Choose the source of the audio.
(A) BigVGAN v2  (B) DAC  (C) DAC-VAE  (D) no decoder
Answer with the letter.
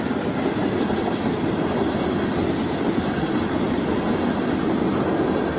D